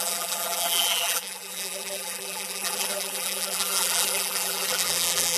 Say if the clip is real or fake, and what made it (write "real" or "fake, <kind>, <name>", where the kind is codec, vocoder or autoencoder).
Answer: fake, vocoder, BigVGAN v2